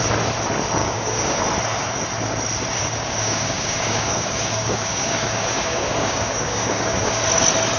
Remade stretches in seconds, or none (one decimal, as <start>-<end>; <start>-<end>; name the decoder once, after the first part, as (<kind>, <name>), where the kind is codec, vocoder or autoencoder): 0.8-1.4 (codec, DAC); 2.8-7.2